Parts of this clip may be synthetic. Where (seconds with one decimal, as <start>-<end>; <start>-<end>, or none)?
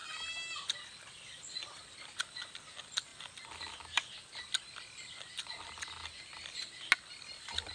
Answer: none